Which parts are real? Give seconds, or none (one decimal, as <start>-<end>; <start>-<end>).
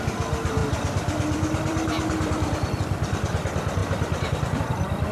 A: 0.0-0.6; 2.8-3.8; 4.6-5.1